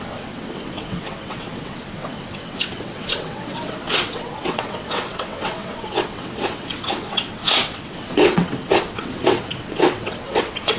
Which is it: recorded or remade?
remade